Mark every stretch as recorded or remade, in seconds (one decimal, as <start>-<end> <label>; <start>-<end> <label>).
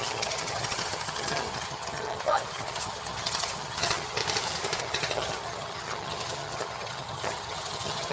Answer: 0.0-4.2 remade; 4.2-4.8 recorded; 4.8-8.1 remade